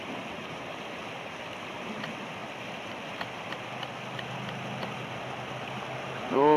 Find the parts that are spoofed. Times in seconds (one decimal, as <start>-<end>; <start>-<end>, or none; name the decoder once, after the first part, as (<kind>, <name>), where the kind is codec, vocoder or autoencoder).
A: 2.4-3.1 (vocoder, BigVGAN v2)